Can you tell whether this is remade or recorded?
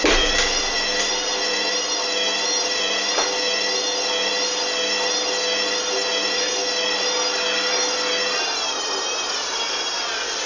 recorded